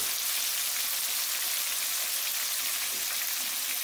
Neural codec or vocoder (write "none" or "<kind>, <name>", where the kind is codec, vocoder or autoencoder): none